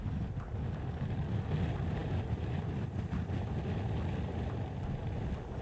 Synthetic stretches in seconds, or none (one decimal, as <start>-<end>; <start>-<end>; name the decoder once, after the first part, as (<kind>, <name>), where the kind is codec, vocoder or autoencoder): 0.5-1.2 (vocoder, BigVGAN v2)